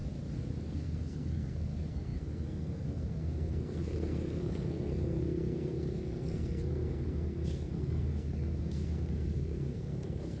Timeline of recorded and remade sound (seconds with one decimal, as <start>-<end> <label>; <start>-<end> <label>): 0.0-0.6 recorded; 0.6-10.4 remade